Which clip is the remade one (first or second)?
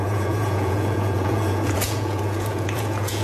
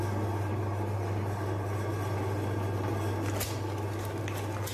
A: first